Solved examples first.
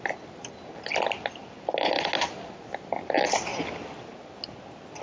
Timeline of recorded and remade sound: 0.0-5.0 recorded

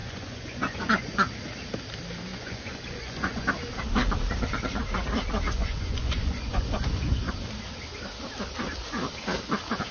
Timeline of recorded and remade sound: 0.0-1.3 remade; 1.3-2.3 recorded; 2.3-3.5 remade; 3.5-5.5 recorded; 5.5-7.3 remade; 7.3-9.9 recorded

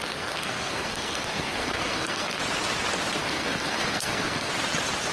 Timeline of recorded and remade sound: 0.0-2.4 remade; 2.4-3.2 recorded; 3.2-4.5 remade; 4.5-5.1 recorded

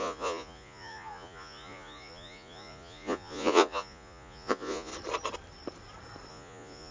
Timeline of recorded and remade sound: 0.0-4.9 remade; 4.9-6.3 recorded; 6.3-6.9 remade

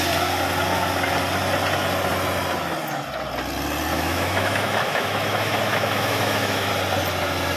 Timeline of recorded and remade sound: 0.0-3.9 recorded; 3.9-6.7 remade; 6.7-7.6 recorded

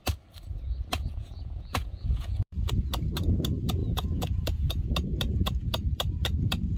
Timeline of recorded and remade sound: 0.0-1.1 recorded; 1.1-2.7 remade; 2.7-3.8 recorded; 3.8-4.7 remade; 4.7-6.8 recorded

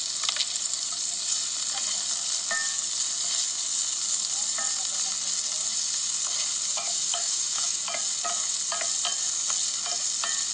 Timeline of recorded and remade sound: 0.0-6.7 recorded; 6.7-7.8 remade; 7.8-10.5 recorded